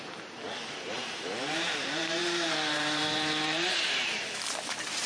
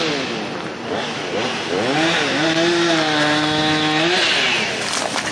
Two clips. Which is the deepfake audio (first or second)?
first